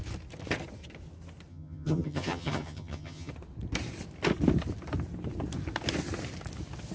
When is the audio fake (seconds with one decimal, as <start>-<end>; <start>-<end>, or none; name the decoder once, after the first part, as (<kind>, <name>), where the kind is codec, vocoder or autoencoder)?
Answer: 1.5-3.3 (vocoder, HiFi-GAN)